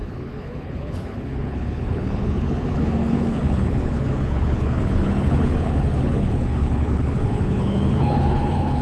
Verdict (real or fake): fake